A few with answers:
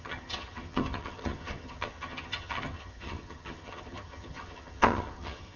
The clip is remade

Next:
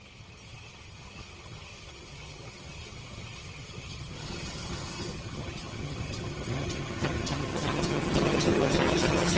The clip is remade